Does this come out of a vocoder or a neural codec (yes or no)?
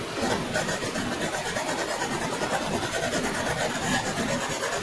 no